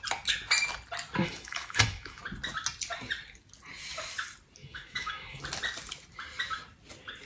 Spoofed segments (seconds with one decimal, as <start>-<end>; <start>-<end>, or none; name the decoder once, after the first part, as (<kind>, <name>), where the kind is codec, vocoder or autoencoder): 1.2-2.2 (autoencoder, DAC-VAE); 4.6-5.4